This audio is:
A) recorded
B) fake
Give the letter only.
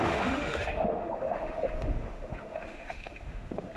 B